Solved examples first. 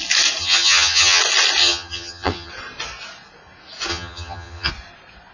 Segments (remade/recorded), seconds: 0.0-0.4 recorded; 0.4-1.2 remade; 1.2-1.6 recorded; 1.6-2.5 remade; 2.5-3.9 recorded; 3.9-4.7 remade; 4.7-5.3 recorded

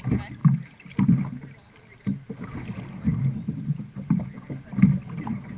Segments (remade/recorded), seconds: 0.0-5.6 recorded

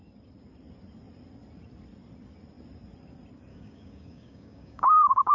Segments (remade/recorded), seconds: 0.0-3.5 recorded; 3.5-5.3 remade